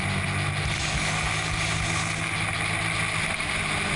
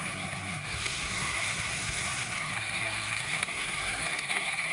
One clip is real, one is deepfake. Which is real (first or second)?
first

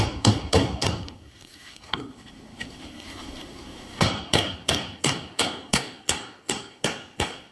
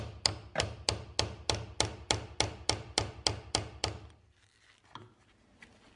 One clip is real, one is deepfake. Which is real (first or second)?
second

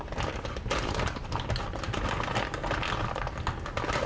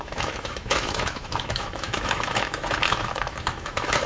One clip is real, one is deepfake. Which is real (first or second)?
first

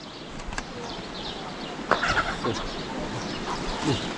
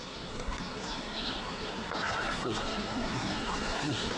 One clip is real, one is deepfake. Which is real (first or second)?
first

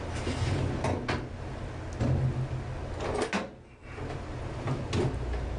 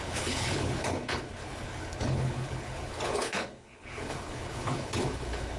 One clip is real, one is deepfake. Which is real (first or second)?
first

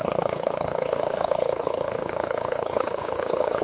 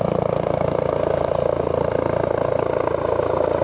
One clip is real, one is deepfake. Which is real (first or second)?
second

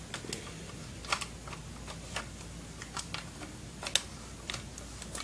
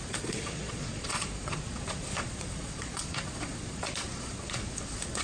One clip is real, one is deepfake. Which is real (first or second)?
first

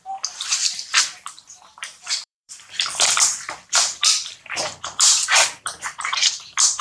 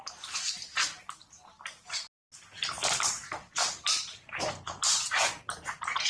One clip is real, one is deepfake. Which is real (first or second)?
second